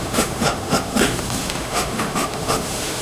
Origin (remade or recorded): remade